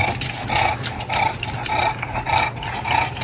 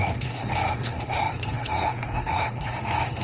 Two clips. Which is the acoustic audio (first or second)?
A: first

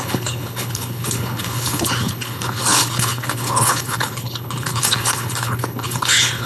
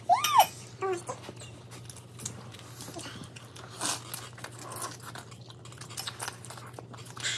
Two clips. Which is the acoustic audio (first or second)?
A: second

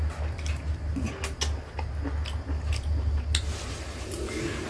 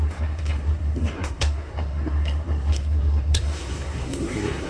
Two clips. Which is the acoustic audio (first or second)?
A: first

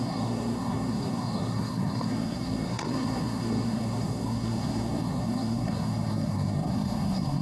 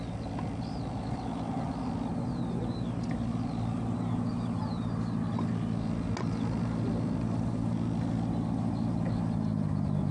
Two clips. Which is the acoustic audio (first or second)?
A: second